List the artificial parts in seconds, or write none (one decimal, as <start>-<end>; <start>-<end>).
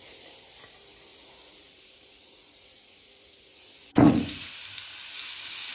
1.1-4.5